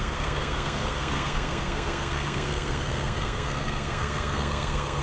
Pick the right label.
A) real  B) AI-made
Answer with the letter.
B